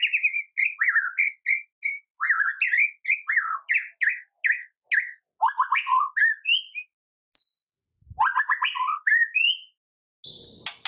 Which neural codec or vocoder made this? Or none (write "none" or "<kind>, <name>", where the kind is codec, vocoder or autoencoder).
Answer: none